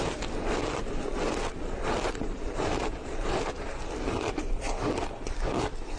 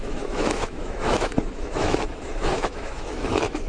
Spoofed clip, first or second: second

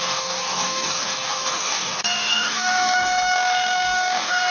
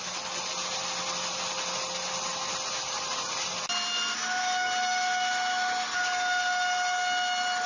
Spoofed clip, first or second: first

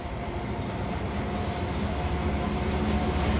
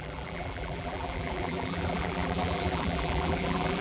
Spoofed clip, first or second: second